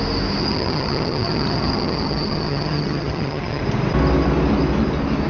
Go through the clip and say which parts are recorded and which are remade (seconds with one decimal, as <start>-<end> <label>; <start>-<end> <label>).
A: 0.0-0.4 recorded; 0.4-3.6 remade; 3.6-5.3 recorded